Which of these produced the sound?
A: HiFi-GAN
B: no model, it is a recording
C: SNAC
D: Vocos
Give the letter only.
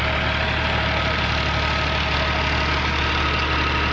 B